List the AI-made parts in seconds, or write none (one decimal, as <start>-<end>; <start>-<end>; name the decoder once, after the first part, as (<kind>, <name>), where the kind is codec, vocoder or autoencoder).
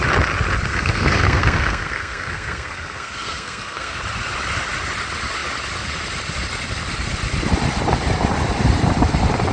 0.7-4.0 (codec, SNAC)